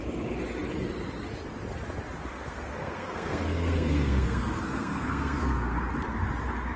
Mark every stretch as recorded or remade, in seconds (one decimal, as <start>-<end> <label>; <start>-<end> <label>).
0.0-2.3 recorded; 2.3-5.8 remade; 5.8-6.8 recorded